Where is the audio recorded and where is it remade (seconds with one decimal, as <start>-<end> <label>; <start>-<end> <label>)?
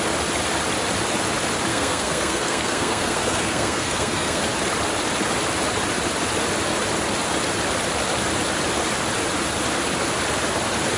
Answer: 0.0-1.7 recorded; 1.7-4.4 remade; 4.4-11.0 recorded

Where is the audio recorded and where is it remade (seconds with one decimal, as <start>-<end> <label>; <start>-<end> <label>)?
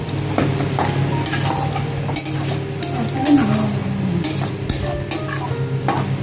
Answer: 0.0-6.2 recorded